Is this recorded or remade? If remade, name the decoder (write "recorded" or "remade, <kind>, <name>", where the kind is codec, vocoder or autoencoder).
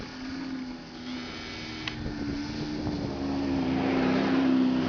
recorded